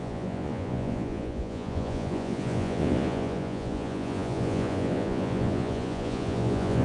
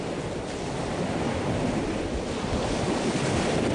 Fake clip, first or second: first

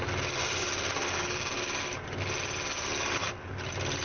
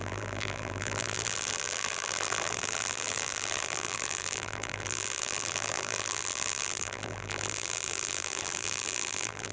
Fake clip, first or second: second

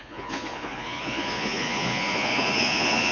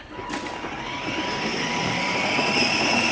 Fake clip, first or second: first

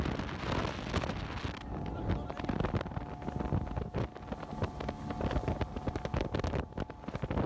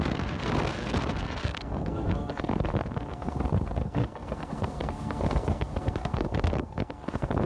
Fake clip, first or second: second